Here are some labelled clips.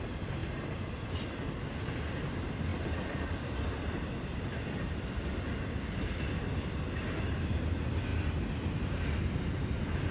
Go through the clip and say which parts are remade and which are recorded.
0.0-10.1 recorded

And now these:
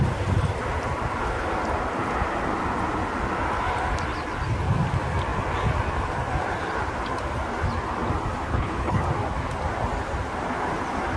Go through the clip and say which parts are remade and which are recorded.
0.0-8.5 recorded; 8.5-9.0 remade; 9.0-11.2 recorded

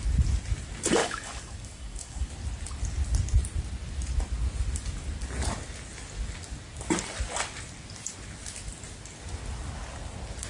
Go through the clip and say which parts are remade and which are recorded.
0.0-1.0 recorded; 1.0-2.3 remade; 2.3-10.5 recorded

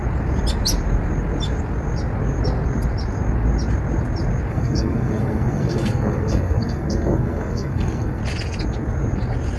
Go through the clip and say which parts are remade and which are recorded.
0.0-4.5 recorded; 4.5-8.2 remade; 8.2-9.6 recorded

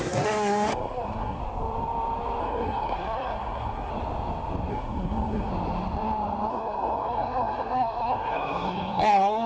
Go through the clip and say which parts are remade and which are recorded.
0.0-1.4 remade; 1.4-2.4 recorded; 2.4-3.9 remade; 3.9-4.7 recorded; 4.7-5.5 remade; 5.5-6.5 recorded; 6.5-9.5 remade

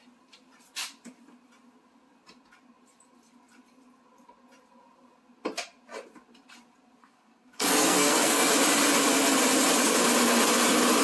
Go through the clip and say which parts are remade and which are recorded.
0.0-7.0 recorded; 7.0-8.5 remade; 8.5-11.0 recorded

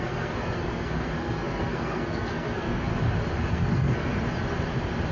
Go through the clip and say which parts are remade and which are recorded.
0.0-2.9 remade; 2.9-3.5 recorded; 3.5-4.1 remade; 4.1-5.1 recorded